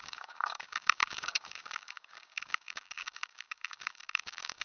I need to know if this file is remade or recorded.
remade